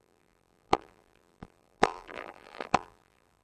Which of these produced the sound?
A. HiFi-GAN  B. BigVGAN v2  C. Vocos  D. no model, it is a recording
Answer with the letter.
B